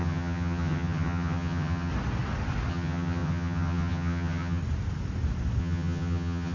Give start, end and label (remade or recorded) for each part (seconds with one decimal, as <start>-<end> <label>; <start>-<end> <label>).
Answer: 0.0-1.9 remade; 1.9-2.7 recorded; 2.7-4.6 remade; 4.6-5.6 recorded; 5.6-6.5 remade